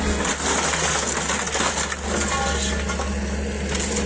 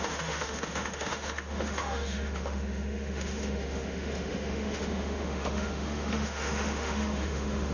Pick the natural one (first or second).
first